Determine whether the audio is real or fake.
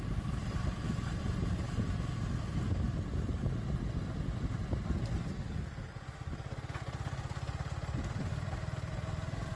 real